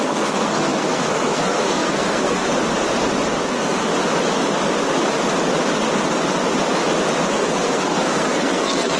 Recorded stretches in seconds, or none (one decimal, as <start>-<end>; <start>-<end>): 2.4-3.5; 3.9-7.3